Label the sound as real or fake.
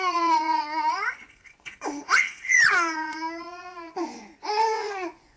fake